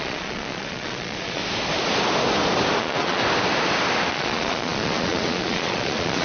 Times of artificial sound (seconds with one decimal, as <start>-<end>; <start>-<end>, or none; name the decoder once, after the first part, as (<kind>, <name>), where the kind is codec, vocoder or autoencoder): 0.0-1.4 (vocoder, Vocos); 2.8-3.2; 4.1-6.2